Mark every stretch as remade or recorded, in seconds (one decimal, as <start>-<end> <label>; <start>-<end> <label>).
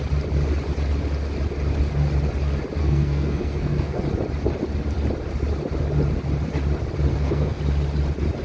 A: 0.0-2.8 recorded; 2.8-4.0 remade; 4.0-7.1 recorded; 7.1-7.6 remade; 7.6-8.4 recorded